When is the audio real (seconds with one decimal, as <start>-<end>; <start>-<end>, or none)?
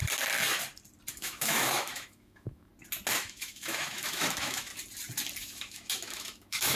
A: 0.0-1.1; 2.7-3.2; 4.7-5.4